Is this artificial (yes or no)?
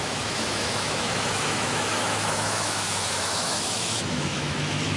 yes